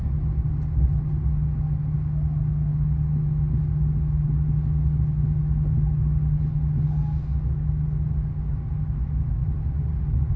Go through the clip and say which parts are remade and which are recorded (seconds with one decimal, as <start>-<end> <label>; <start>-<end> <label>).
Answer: 0.0-10.4 recorded